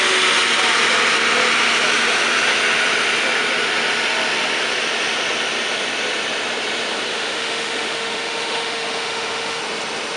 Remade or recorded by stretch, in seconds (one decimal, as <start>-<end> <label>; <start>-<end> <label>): 0.0-7.1 recorded; 7.1-9.6 remade; 9.6-10.2 recorded